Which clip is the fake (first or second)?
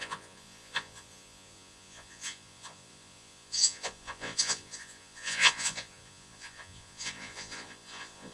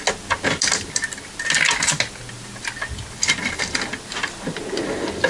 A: first